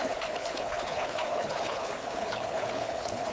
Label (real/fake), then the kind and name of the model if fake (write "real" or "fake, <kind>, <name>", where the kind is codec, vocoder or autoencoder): fake, codec, HILCodec